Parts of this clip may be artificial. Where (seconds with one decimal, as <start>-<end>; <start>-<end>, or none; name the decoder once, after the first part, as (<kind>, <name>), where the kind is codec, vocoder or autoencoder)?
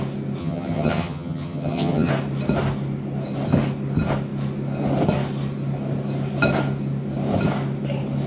0.4-2.1 (vocoder, HiFi-GAN)